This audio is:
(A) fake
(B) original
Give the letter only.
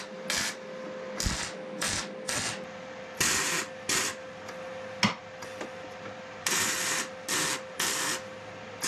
B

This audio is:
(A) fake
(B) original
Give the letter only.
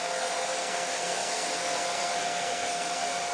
A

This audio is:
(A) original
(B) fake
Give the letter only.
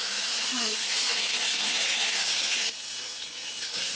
B